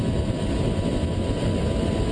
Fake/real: real